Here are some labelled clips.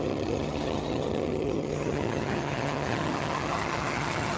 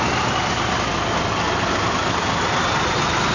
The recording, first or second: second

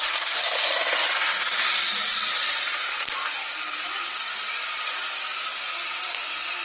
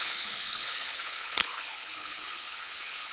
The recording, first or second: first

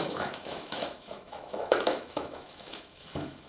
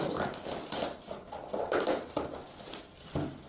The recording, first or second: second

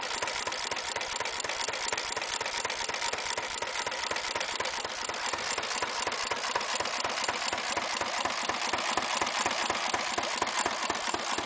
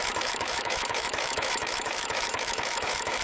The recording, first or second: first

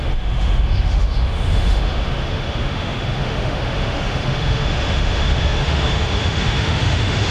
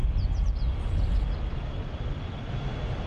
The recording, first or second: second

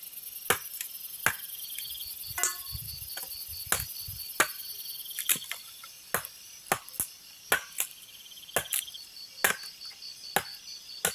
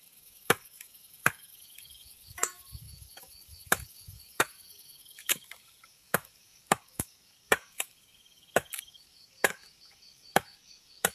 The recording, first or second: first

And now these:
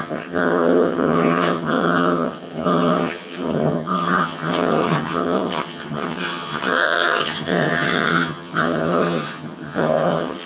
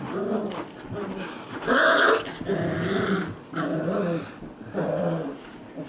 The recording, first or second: second